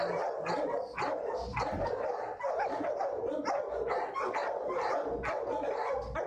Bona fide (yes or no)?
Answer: yes